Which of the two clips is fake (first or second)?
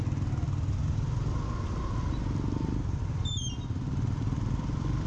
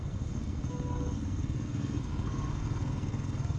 second